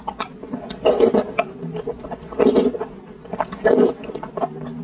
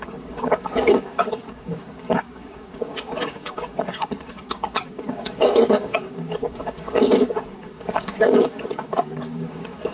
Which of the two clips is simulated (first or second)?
second